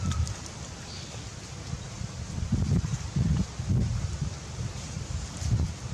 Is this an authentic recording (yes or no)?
yes